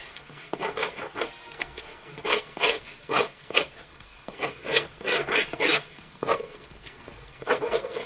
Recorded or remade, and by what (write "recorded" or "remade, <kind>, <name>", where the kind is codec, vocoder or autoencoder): remade, codec, SNAC